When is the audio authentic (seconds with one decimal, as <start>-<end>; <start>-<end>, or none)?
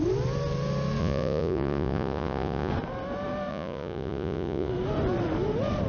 0.0-1.0; 2.7-3.5; 4.7-5.9